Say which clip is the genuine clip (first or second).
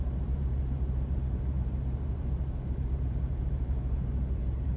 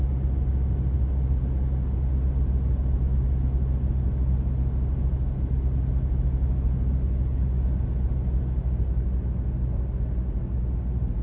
second